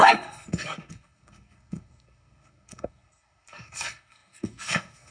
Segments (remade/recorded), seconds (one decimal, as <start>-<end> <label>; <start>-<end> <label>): 0.0-5.1 remade